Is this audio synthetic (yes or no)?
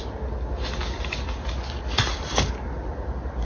no